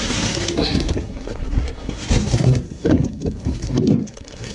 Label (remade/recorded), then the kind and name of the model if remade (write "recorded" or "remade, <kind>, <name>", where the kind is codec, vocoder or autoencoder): remade, codec, SNAC